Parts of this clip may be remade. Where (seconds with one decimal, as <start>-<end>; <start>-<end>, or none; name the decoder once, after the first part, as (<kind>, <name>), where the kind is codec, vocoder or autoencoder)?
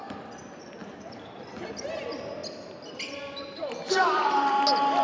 none